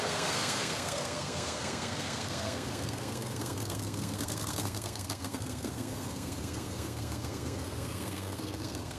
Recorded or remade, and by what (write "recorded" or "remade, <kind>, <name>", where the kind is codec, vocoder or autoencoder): remade, codec, SNAC